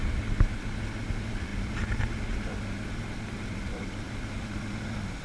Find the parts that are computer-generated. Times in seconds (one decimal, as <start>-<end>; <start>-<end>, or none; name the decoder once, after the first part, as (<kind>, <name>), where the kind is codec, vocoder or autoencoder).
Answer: 1.5-4.6 (vocoder, BigVGAN v2)